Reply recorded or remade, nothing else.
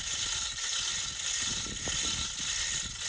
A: recorded